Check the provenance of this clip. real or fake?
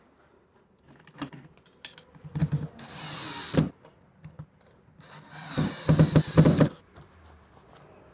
real